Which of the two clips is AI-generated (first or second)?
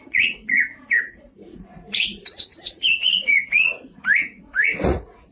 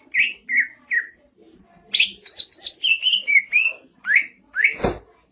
first